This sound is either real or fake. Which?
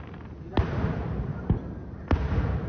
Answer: real